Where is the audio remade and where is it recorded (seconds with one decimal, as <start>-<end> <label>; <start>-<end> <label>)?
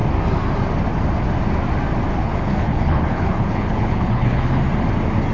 0.0-2.1 recorded; 2.1-4.6 remade; 4.6-5.3 recorded